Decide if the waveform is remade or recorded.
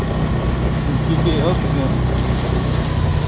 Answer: recorded